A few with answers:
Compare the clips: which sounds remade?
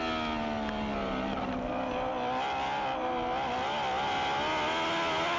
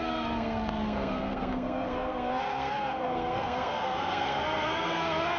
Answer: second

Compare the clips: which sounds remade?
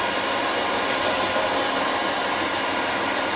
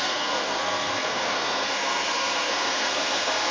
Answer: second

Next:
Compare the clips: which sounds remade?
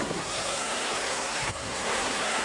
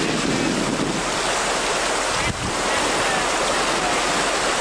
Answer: first